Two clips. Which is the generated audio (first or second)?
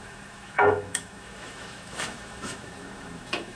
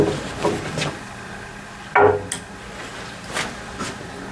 first